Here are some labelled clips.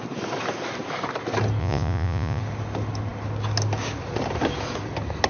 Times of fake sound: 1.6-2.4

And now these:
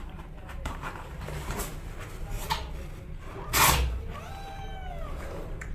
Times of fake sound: 0.0-1.7; 3.9-4.3; 5.0-5.7

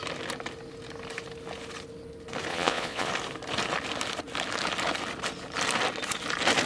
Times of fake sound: 2.5-3.1